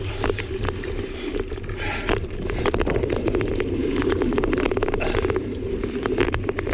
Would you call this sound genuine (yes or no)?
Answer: no